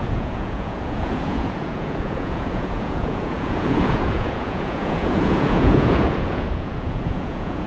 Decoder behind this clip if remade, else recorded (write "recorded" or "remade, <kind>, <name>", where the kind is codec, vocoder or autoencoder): remade, vocoder, Vocos